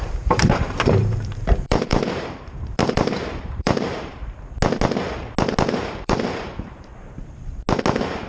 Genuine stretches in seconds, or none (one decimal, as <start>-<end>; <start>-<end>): 4.2-5.8; 6.9-8.3